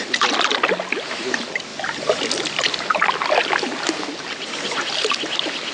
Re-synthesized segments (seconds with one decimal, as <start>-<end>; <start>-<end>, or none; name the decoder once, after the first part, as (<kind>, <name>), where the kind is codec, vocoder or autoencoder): none